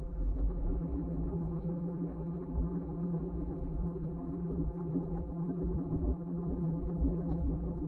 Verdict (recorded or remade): remade